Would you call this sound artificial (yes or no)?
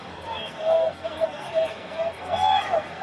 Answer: yes